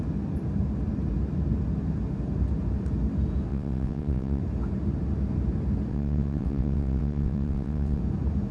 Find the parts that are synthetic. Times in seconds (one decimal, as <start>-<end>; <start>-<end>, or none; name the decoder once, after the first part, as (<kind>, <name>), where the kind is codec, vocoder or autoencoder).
3.5-4.4 (vocoder, WaveNeXt); 5.9-8.0